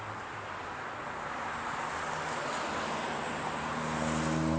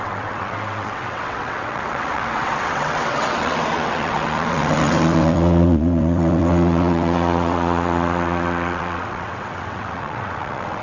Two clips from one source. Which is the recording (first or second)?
first